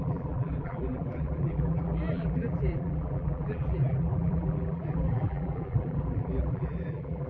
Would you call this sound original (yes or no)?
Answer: no